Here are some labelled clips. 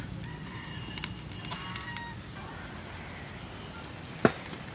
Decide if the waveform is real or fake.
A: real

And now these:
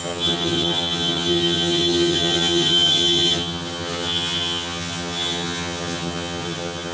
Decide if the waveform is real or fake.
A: fake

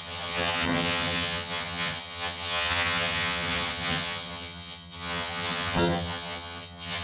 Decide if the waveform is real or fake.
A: fake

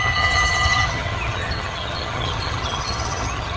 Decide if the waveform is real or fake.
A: fake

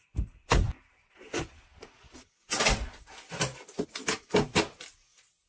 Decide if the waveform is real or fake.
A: real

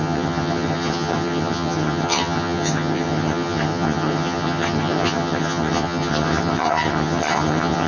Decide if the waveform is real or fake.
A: fake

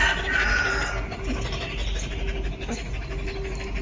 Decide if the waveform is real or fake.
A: real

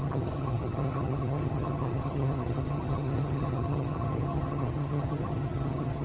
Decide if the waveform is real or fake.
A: fake